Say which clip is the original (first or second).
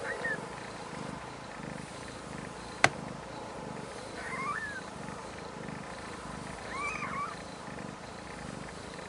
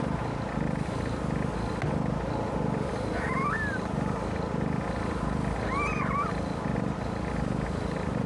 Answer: second